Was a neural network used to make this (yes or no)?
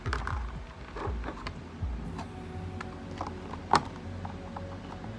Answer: no